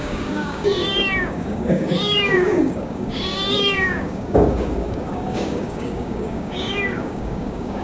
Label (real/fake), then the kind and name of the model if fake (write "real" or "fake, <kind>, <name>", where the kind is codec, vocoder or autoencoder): fake, codec, DAC